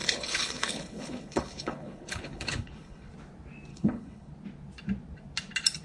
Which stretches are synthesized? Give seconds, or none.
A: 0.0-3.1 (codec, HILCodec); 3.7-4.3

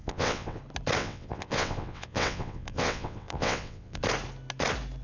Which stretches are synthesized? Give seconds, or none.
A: 0.0-0.6 (vocoder, WaveNeXt); 1.0-4.0

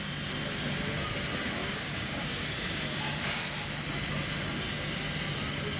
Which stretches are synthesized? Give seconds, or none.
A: 1.6-3.4 (codec, DAC)

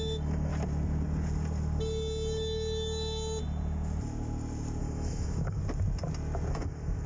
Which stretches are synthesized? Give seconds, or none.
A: 0.0-0.5 (autoencoder, DAC-VAE); 4.8-5.6; 6.5-7.1

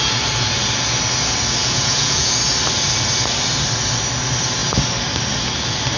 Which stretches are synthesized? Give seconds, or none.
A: 1.6-2.3 (vocoder, Vocos)

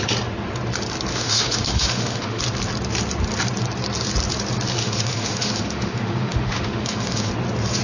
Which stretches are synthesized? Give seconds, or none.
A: 1.1-2.4 (autoencoder, DAC-VAE); 4.8-7.3